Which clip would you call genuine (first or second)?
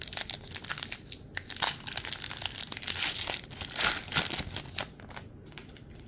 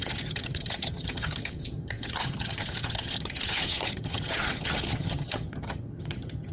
first